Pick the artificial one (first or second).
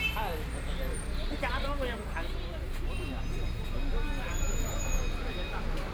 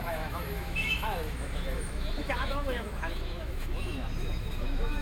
second